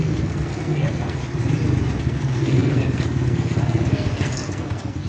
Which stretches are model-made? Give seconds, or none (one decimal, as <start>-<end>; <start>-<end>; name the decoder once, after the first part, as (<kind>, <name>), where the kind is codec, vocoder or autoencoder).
0.0-1.2 (codec, SNAC); 2.0-5.1